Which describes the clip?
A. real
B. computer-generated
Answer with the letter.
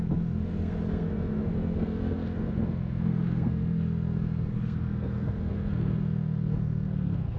B